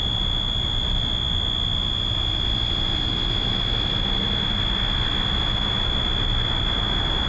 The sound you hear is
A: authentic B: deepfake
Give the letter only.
A